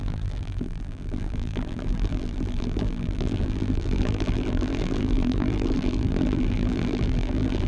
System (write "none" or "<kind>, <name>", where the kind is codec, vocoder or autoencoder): vocoder, BigVGAN v2